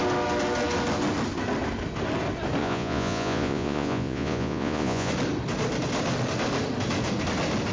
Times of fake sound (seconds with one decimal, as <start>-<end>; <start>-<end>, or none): 2.6-5.1